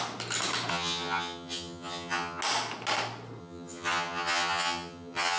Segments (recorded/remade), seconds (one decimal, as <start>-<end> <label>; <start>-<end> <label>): 0.0-0.7 recorded; 0.7-2.4 remade; 2.4-3.4 recorded; 3.4-5.4 remade